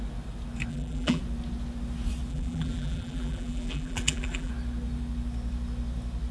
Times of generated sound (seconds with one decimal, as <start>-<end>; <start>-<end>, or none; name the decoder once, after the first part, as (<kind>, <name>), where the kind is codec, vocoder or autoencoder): 0.7-1.2 (vocoder, BigVGAN v2); 2.3-4.5